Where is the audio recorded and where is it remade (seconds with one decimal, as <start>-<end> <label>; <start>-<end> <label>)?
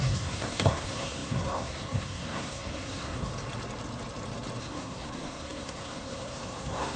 0.0-3.3 remade; 3.3-4.6 recorded; 4.6-7.0 remade